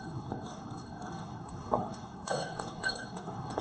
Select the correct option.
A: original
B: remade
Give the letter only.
B